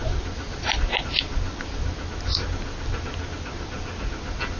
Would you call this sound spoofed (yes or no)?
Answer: no